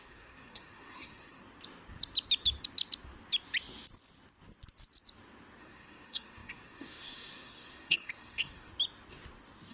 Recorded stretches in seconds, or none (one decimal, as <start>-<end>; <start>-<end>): 1.4-5.6; 8.7-9.7